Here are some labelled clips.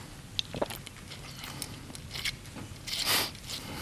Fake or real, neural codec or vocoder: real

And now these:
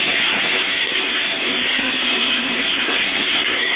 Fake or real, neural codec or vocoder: fake, codec, SNAC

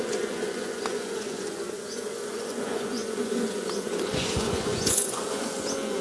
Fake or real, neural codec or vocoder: fake, vocoder, Vocos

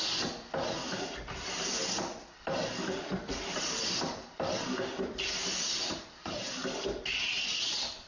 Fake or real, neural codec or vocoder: real